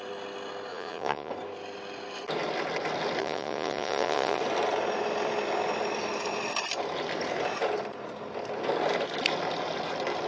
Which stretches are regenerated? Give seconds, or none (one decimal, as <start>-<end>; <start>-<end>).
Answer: 0.7-1.3; 3.2-4.4